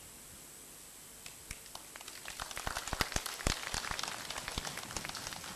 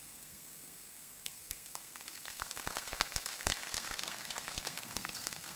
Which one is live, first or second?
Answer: first